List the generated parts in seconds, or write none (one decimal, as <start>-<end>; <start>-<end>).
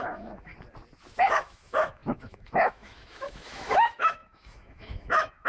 0.0-0.5; 1.3-5.5